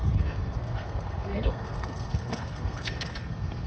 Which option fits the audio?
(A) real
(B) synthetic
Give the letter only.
B